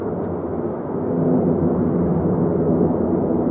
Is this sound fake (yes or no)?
no